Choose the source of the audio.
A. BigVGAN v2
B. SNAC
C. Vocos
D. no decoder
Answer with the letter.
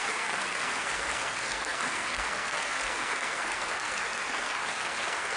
B